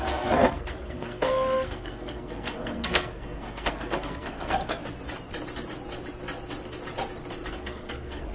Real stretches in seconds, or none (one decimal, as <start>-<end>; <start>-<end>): 4.8-7.5